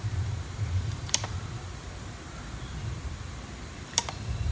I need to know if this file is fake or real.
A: fake